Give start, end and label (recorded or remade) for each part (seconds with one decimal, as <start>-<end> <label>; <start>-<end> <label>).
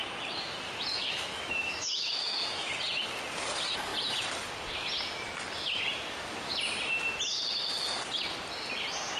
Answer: 0.0-0.9 recorded; 0.9-2.7 remade; 2.7-9.2 recorded